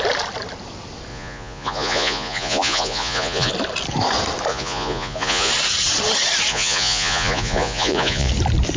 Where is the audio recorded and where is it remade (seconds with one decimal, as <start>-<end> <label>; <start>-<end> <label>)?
0.0-1.1 recorded; 1.1-3.5 remade; 3.5-4.5 recorded; 4.5-5.5 remade; 5.5-6.5 recorded; 6.5-8.3 remade; 8.3-8.8 recorded